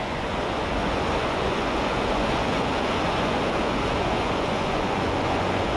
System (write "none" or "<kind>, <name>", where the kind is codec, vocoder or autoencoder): vocoder, Vocos